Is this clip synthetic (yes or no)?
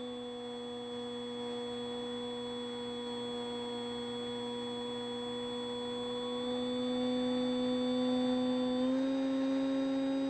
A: no